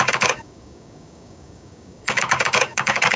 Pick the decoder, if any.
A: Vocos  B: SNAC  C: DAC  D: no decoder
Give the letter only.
C